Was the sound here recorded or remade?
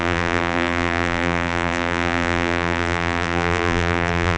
remade